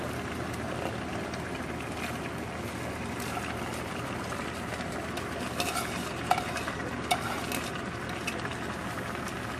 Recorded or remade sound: recorded